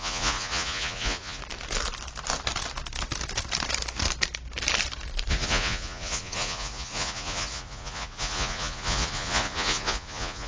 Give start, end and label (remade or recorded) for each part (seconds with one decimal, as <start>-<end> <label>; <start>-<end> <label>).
0.0-1.4 remade; 1.4-5.3 recorded; 5.3-10.5 remade